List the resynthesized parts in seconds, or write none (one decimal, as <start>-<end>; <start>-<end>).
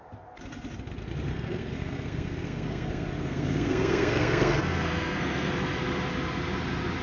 1.3-5.5